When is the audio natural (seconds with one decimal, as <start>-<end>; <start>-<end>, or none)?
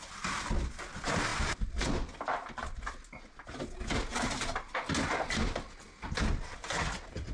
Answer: 0.0-7.3